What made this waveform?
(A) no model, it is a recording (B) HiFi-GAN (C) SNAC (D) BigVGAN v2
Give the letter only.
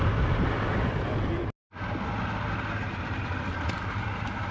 A